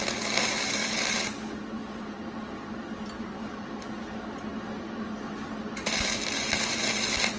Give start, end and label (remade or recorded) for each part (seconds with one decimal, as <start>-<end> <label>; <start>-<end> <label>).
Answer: 0.0-7.4 recorded